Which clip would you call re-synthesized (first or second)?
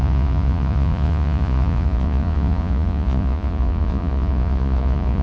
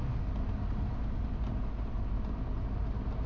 first